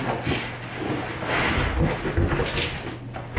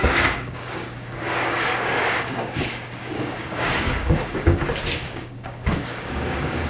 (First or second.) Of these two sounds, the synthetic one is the second